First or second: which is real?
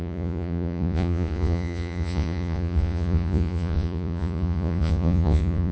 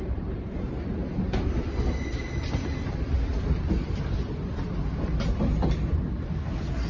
second